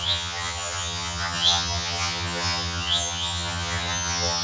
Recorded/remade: remade